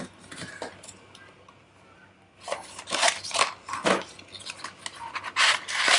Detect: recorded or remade recorded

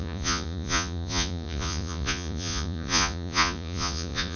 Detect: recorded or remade remade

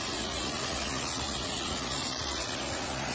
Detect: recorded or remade remade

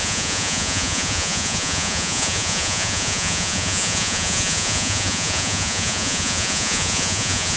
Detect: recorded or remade remade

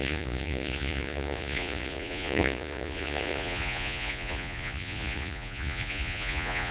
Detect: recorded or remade remade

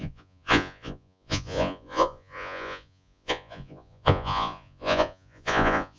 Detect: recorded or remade remade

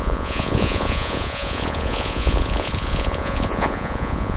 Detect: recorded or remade remade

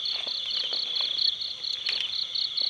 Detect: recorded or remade recorded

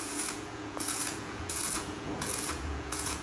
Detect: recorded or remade remade